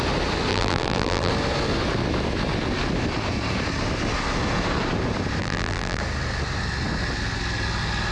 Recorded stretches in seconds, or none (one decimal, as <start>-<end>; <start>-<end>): 0.0-0.5; 1.3-5.4; 6.0-8.1